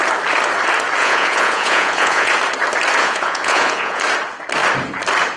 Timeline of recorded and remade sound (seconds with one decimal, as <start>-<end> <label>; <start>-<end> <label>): 0.0-1.0 recorded; 1.0-2.3 remade; 2.3-3.0 recorded; 3.0-4.0 remade; 4.0-5.4 recorded